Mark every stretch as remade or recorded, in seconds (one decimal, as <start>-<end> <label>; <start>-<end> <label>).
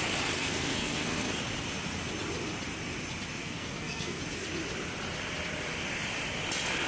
0.0-0.4 recorded; 0.4-1.4 remade; 1.4-3.4 recorded; 3.4-4.2 remade; 4.2-6.9 recorded